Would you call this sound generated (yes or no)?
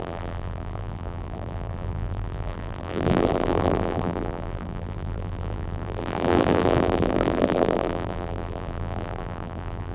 yes